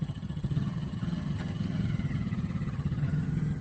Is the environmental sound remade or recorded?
remade